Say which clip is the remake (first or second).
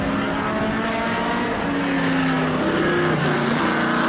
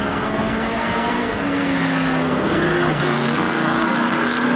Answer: second